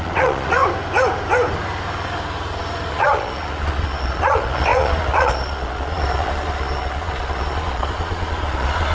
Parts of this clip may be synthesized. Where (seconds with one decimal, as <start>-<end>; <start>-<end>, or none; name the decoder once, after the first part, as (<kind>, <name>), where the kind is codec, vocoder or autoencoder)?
0.0-0.6 (vocoder, Vocos); 2.9-8.9